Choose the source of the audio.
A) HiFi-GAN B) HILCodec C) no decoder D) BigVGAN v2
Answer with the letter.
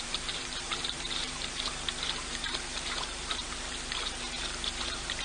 D